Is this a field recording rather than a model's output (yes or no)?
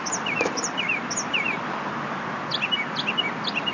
yes